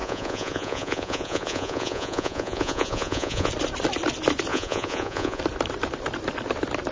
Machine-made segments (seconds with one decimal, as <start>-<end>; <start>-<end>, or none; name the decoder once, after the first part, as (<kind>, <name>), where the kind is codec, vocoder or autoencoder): 0.0-3.5 (vocoder, Vocos); 4.5-5.4